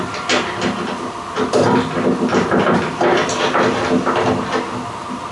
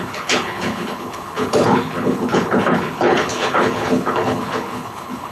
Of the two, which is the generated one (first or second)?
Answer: second